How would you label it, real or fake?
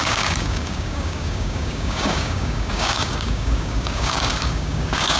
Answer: fake